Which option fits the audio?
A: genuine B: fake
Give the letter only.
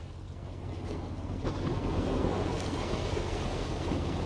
B